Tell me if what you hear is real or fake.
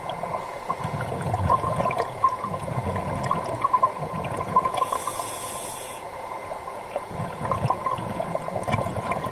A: fake